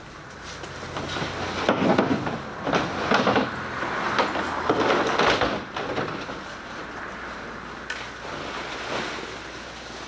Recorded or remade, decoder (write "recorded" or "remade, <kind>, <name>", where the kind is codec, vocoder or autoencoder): recorded